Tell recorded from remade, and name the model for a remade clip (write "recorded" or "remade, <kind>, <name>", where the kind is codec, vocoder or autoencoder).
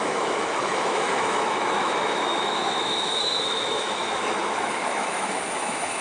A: remade, autoencoder, DAC-VAE